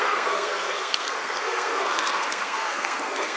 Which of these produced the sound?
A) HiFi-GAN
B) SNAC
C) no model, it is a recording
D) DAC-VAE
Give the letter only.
B